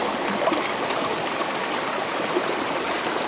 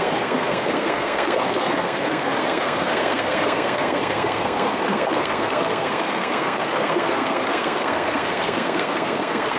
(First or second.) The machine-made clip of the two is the second